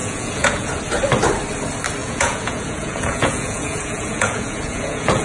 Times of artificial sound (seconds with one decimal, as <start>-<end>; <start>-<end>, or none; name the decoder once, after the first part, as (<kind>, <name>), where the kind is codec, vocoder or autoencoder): 0.0-0.8 (vocoder, Vocos); 2.0-5.2